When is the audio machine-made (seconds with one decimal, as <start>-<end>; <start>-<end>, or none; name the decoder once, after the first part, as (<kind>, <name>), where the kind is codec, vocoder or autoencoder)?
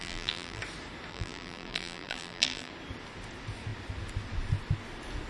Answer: 0.0-0.6 (vocoder, BigVGAN v2); 1.1-2.7